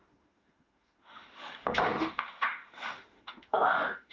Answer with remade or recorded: remade